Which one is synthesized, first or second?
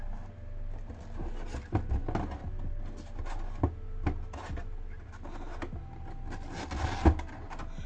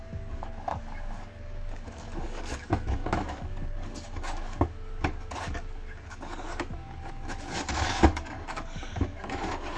second